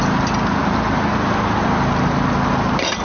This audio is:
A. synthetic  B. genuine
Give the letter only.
B